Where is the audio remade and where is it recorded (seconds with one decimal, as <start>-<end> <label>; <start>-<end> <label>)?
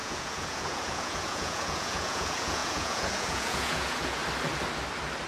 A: 0.0-4.2 remade; 4.2-5.3 recorded